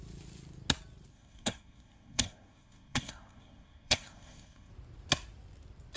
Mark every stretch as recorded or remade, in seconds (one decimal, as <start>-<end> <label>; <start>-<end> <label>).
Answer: 0.0-1.1 recorded; 1.1-4.7 remade; 4.7-6.0 recorded